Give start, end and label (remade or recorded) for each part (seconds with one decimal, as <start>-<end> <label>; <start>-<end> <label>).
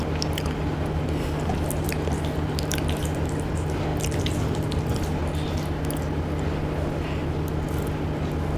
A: 0.0-8.6 recorded